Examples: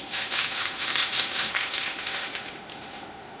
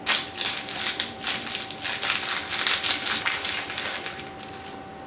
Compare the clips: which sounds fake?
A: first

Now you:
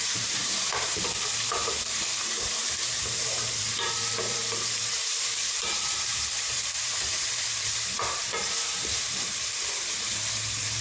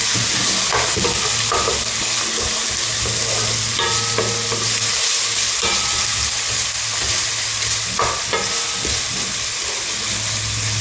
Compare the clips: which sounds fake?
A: first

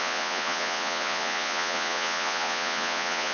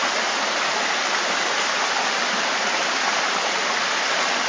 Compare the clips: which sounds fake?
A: first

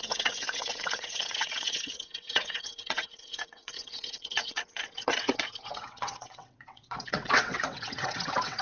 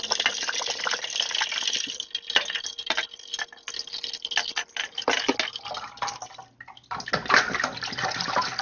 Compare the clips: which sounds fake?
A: first